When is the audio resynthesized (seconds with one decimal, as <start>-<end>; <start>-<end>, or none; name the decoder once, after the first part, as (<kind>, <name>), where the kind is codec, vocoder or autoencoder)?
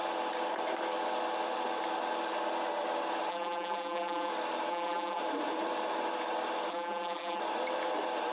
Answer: 3.3-4.3 (vocoder, BigVGAN v2); 4.7-5.2; 6.7-7.4